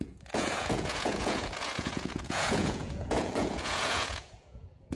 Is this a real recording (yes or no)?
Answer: no